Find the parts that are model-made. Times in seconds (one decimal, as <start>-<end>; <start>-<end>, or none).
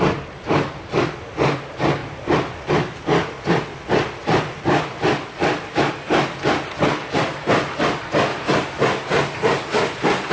none